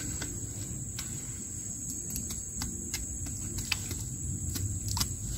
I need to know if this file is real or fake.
real